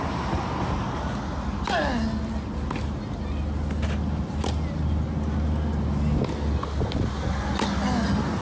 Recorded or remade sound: recorded